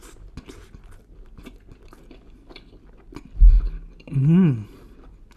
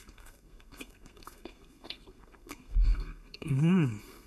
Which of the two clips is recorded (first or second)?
first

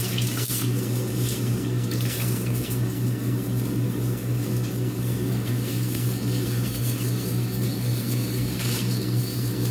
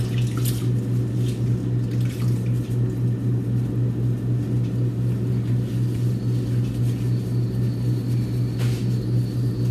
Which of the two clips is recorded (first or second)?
second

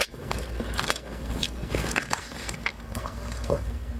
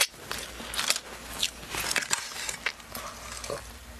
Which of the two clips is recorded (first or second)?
second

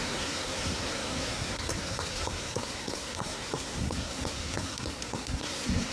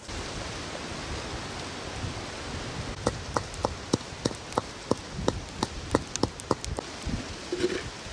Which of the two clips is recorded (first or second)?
second